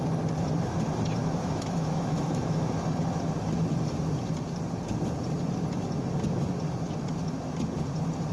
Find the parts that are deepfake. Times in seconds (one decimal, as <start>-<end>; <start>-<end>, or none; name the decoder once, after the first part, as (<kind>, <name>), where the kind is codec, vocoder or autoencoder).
1.2-2.7 (autoencoder, DAC-VAE)